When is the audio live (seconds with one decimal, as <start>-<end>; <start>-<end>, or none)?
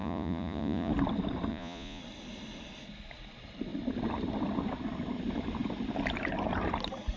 0.9-1.5; 2.0-7.2